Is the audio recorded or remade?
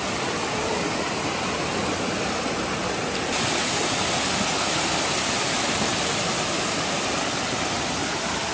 recorded